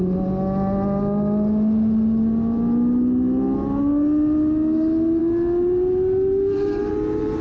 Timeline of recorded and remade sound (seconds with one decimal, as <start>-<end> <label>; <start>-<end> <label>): 0.0-7.4 recorded